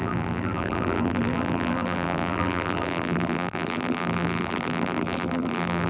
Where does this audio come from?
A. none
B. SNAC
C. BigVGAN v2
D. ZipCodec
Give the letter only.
C